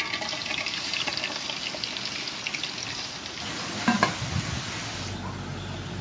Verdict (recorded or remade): recorded